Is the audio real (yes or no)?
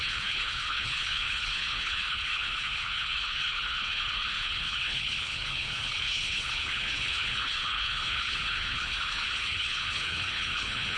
no